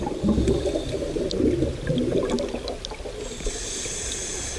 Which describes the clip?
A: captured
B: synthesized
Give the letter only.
A